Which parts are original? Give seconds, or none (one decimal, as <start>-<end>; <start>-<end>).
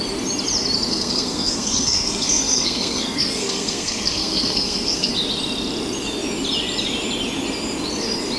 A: 0.0-0.9; 5.1-8.4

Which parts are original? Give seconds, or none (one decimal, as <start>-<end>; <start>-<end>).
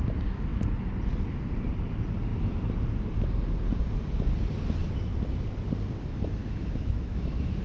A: 0.0-6.4